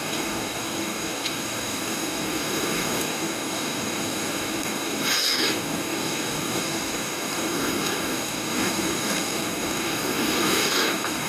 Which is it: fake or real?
fake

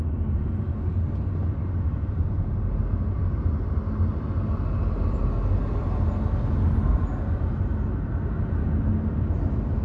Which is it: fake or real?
real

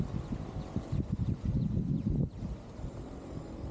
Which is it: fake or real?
real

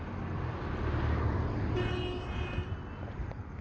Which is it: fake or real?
real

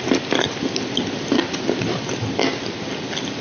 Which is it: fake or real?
real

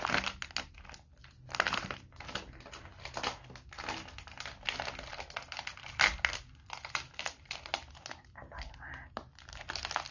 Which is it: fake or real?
real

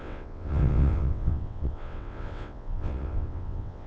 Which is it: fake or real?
fake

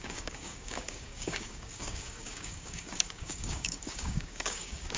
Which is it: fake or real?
fake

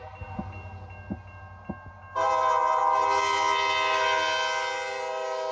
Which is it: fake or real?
real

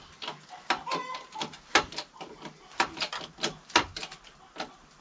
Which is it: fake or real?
real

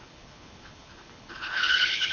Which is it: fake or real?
fake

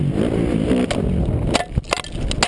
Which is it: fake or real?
real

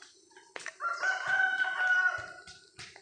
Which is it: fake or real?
real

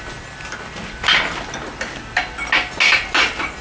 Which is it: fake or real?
real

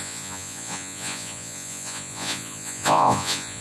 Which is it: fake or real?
fake